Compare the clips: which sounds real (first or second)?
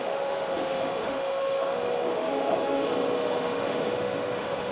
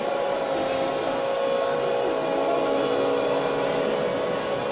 second